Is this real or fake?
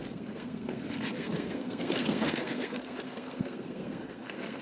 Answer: fake